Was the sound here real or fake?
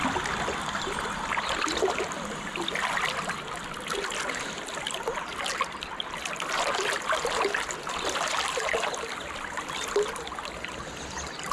real